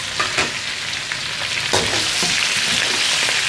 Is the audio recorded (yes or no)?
yes